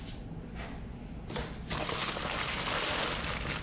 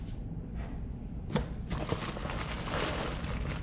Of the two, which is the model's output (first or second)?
second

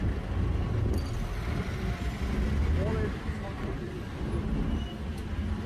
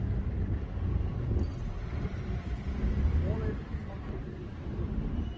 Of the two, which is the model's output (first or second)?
second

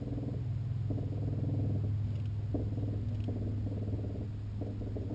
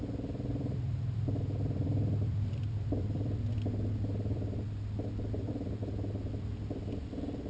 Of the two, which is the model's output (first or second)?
second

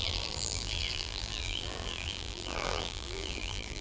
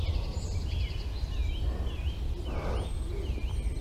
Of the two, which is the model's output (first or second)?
first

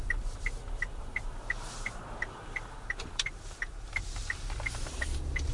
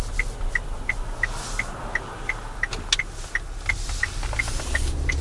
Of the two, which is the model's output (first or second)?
first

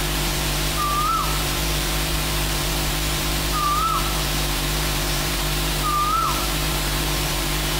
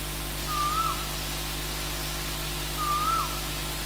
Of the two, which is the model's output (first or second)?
first